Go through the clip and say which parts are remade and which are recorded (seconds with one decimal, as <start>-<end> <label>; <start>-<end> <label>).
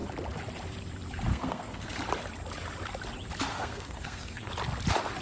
0.0-1.3 recorded; 1.3-1.9 remade; 1.9-3.5 recorded; 3.5-4.5 remade; 4.5-5.2 recorded